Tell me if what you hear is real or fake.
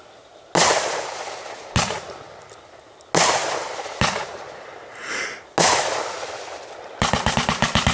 real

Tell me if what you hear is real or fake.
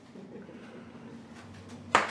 real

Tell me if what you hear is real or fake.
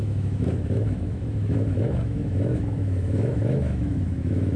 fake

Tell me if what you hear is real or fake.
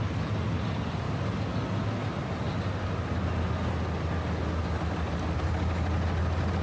real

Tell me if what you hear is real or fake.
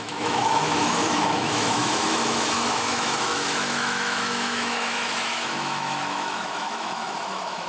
fake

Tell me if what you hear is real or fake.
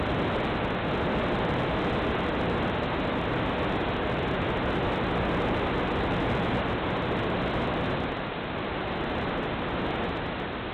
real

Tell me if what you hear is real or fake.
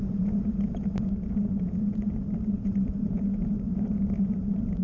fake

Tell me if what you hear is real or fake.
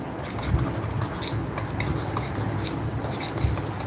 real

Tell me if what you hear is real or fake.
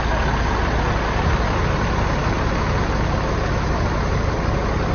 real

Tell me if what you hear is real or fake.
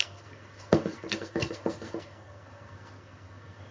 fake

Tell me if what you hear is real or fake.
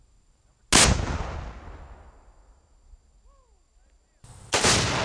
real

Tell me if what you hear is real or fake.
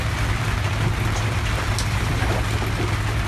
real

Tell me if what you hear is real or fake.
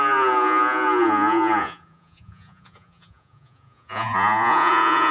fake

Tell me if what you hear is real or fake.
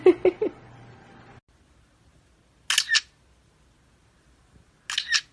real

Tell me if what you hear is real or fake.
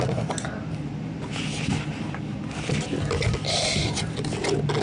real